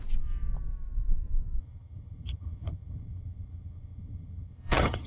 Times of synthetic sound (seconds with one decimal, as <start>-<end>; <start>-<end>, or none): 1.6-5.1